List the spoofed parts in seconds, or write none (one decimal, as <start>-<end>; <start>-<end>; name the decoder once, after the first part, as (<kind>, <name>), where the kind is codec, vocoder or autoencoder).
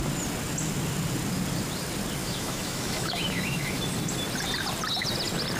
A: 2.2-3.8 (autoencoder, DAC-VAE)